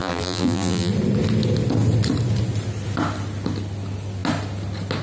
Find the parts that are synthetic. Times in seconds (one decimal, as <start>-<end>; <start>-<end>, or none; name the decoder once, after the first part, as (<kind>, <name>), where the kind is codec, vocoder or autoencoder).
0.0-0.9 (vocoder, BigVGAN v2)